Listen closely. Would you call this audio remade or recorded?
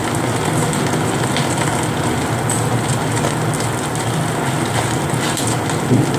recorded